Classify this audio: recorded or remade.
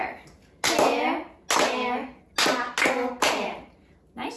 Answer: recorded